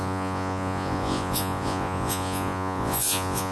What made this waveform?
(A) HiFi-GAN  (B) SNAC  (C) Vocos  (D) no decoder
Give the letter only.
C